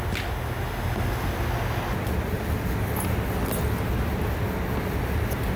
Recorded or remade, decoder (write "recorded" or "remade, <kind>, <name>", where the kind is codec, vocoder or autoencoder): recorded